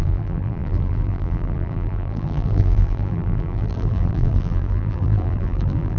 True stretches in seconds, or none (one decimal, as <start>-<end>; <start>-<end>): none